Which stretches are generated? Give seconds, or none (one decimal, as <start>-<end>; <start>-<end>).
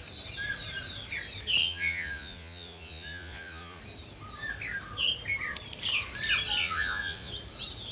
1.6-3.8; 6.6-7.3